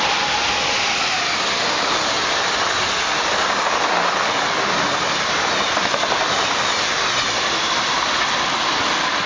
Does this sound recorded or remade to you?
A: recorded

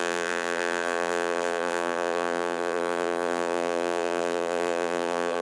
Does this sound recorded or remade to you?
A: remade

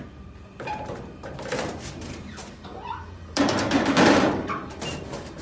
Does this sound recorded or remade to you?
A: remade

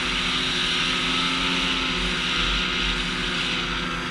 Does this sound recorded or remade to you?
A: recorded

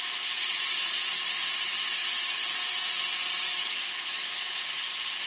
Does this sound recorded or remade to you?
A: recorded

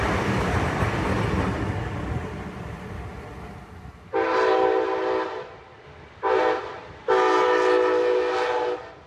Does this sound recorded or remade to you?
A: recorded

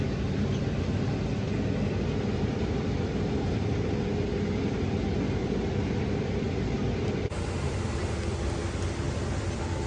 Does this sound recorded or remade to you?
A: recorded